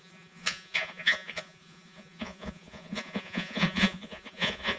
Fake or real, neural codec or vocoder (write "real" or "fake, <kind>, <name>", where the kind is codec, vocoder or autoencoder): fake, vocoder, Vocos